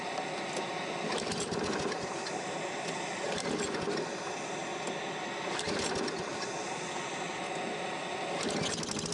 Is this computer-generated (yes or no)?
no